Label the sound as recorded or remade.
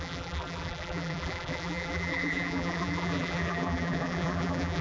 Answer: remade